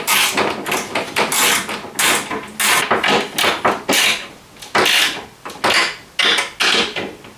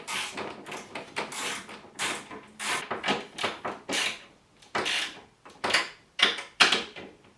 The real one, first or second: first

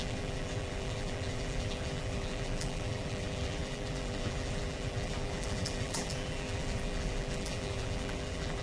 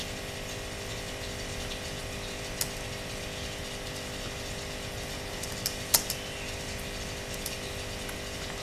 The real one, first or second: second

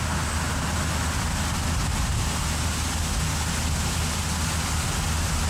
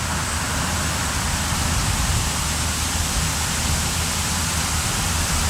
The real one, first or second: first